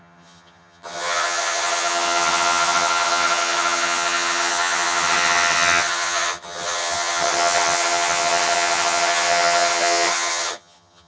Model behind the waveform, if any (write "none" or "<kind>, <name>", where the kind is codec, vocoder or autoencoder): vocoder, HiFi-GAN